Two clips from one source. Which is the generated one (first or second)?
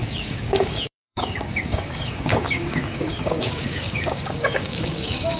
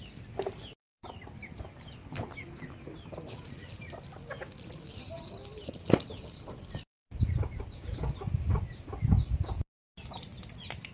first